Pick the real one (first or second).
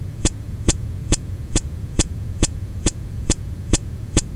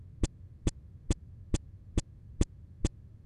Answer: second